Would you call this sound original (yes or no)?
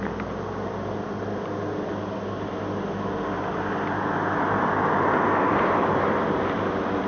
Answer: yes